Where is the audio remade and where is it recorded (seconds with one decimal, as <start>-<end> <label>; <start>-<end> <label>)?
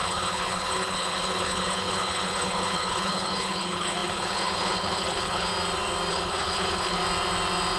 0.0-5.5 remade; 5.5-6.1 recorded; 6.1-7.0 remade; 7.0-7.8 recorded